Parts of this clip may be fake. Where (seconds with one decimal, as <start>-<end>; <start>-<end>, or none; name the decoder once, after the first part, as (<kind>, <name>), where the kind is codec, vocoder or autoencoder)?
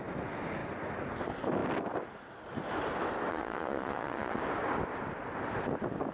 3.3-4.4 (vocoder, Vocos)